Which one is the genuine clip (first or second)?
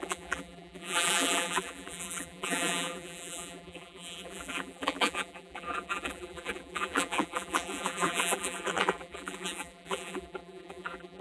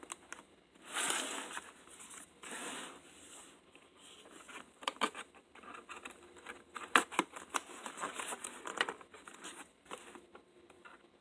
second